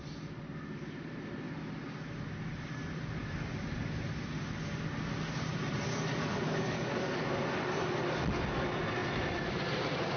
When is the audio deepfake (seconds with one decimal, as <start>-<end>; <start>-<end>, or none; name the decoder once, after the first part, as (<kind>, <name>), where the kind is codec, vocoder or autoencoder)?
6.3-7.4 (codec, DAC)